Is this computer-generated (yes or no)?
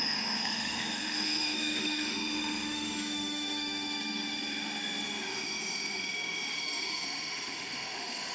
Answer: yes